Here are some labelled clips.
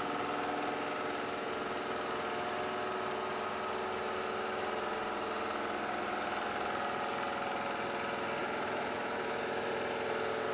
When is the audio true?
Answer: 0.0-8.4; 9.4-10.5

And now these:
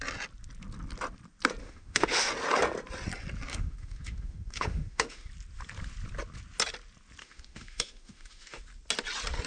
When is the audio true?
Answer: 0.0-1.6; 2.3-3.5; 5.3-7.2; 8.6-9.5

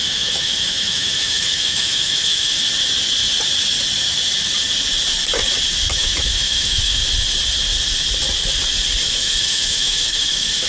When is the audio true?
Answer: 2.5-5.9; 7.0-9.1

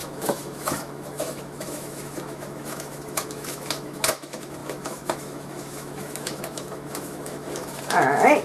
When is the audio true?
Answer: none

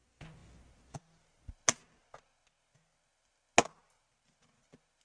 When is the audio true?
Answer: 0.0-5.0

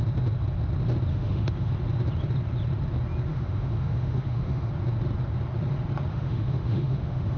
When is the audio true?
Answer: 0.0-1.1; 1.7-3.3; 4.7-6.1

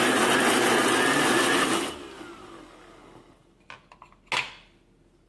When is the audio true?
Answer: 0.0-5.3

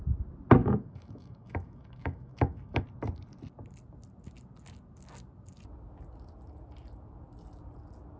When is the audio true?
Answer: 0.0-0.6; 2.8-8.2